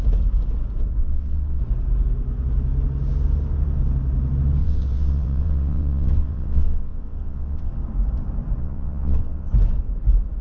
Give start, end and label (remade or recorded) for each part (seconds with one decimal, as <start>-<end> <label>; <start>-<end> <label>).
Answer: 0.0-1.0 recorded; 1.0-1.6 remade; 1.6-4.6 recorded; 4.6-7.7 remade; 7.7-8.6 recorded; 8.6-9.5 remade; 9.5-10.4 recorded